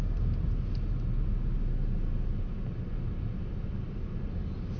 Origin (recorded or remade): recorded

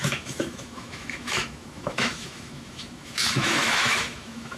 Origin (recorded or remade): remade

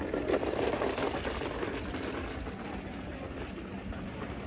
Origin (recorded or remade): recorded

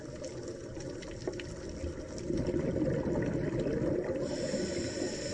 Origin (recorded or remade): recorded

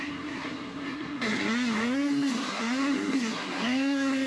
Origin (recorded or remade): remade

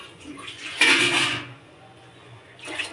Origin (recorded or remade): remade